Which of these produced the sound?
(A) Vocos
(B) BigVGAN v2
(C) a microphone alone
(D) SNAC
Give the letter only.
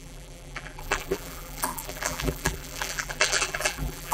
B